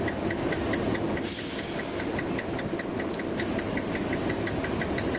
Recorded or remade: recorded